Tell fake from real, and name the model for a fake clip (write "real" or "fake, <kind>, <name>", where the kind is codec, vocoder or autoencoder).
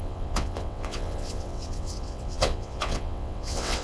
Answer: fake, vocoder, WaveNeXt